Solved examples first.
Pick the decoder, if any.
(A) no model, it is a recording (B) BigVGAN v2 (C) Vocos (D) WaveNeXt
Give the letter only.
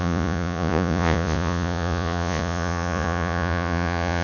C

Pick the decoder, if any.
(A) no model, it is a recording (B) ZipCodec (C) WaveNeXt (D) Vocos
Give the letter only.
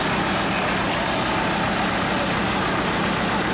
A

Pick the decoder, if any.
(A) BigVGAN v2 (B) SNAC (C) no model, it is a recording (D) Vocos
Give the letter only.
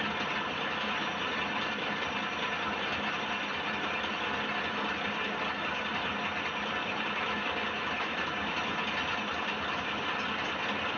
C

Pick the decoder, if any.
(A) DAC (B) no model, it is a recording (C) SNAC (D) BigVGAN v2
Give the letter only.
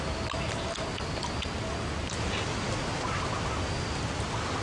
B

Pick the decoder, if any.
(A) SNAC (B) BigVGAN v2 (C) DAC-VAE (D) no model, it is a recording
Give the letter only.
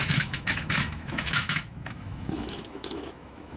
C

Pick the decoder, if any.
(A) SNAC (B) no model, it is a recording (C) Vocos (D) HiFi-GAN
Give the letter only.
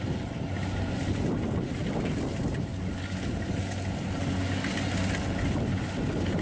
B